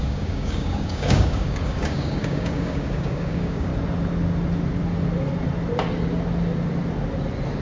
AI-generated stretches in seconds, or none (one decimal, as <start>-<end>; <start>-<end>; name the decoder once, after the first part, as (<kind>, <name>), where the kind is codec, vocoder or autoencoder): 0.0-3.7 (codec, DAC)